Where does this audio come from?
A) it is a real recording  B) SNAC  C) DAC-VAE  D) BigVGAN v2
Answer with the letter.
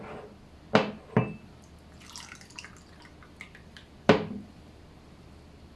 A